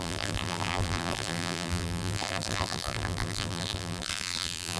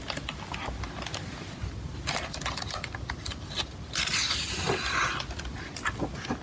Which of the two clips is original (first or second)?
second